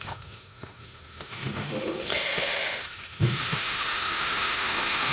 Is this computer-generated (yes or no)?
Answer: yes